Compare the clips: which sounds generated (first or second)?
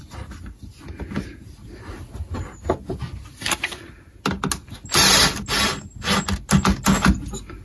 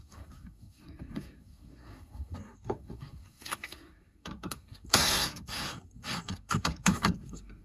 second